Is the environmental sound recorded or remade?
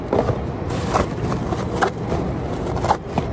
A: recorded